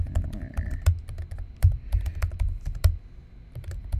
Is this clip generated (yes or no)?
no